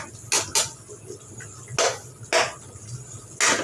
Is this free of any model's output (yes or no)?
yes